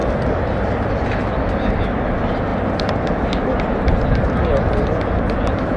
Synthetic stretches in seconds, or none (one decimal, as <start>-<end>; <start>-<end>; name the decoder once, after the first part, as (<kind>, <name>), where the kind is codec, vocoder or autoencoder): 0.0-0.9 (vocoder, BigVGAN v2)

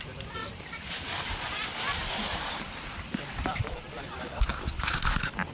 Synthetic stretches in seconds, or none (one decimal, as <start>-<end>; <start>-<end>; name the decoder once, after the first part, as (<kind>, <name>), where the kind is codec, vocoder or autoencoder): 0.4-3.7 (vocoder, BigVGAN v2)

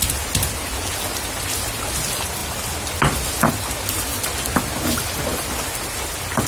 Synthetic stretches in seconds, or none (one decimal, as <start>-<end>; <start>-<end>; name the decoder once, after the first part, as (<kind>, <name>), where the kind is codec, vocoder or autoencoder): 2.4-3.3 (vocoder, BigVGAN v2)

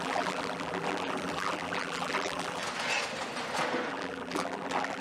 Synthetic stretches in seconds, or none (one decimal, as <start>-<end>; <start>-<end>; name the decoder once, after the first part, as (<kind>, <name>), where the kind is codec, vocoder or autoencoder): 0.0-2.6 (vocoder, BigVGAN v2); 3.9-5.0

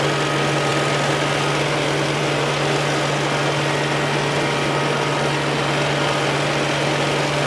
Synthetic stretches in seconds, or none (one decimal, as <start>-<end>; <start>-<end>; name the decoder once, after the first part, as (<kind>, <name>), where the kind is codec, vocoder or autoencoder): none

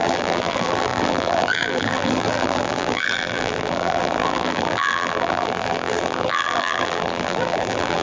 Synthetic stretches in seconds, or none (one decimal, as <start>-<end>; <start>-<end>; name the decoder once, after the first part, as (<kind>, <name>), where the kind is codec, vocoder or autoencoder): 0.0-8.0 (vocoder, BigVGAN v2)

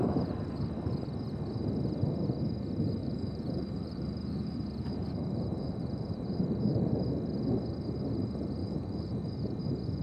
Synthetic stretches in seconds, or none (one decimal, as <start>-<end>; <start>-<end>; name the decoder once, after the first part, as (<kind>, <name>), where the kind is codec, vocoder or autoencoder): 3.0-6.4 (vocoder, BigVGAN v2); 8.6-9.2